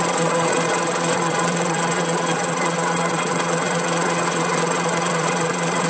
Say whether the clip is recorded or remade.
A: remade